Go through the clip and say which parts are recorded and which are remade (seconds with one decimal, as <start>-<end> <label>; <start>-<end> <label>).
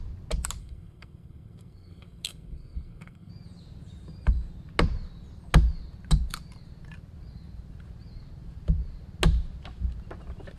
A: 0.0-0.6 recorded; 0.6-3.3 remade; 3.3-10.6 recorded